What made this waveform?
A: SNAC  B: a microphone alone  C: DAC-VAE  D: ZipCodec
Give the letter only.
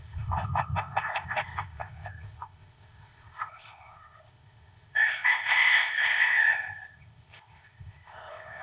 D